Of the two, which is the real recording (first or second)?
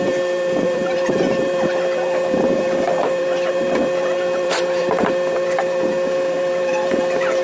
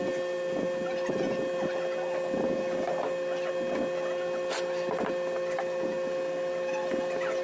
second